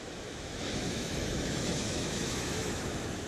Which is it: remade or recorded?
remade